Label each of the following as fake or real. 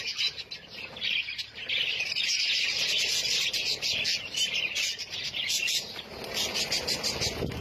real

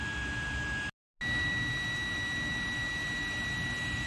real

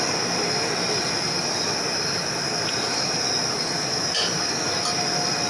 real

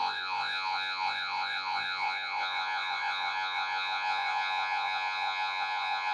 fake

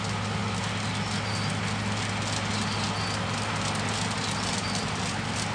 real